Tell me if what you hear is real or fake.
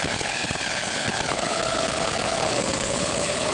fake